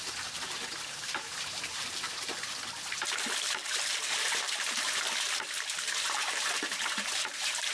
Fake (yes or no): yes